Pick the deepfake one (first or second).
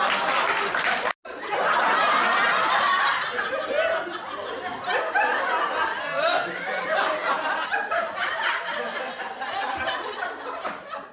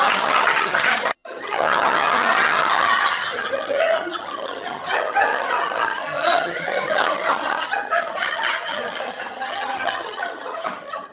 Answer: second